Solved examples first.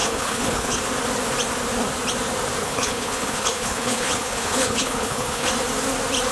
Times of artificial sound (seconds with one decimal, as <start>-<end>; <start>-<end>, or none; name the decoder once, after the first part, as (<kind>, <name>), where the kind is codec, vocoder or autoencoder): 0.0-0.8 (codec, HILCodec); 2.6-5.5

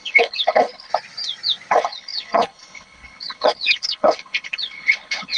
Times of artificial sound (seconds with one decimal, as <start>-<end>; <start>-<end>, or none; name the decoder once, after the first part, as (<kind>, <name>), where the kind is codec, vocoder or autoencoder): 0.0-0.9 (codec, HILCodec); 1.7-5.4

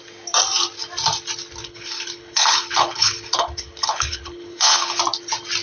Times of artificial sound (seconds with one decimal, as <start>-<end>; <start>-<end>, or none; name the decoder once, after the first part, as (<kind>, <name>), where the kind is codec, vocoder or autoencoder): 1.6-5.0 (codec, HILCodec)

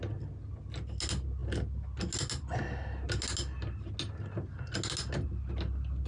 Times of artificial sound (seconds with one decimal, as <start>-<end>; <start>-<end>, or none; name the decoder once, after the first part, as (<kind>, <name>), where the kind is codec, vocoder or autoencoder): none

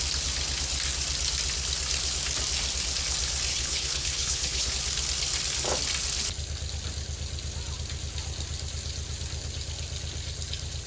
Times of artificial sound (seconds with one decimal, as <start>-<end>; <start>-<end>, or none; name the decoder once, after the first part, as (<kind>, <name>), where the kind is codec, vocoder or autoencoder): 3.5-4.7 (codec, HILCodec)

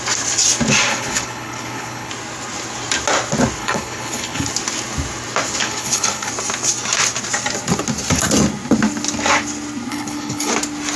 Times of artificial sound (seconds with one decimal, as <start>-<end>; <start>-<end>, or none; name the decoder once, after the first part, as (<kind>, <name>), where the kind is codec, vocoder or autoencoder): 0.9-2.1 (codec, HILCodec); 3.6-4.5; 5.6-6.3; 9.9-10.5

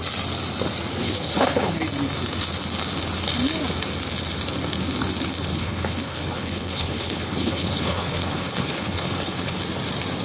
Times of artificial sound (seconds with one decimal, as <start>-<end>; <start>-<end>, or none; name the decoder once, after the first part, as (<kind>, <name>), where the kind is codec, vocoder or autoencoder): 1.0-1.7 (codec, HILCodec); 5.5-9.6

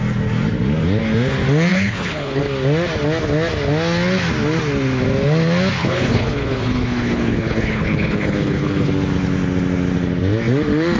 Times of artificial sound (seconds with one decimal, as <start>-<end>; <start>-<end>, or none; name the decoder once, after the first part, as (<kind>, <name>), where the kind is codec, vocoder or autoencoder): 1.7-2.4 (codec, HILCodec); 5.8-8.9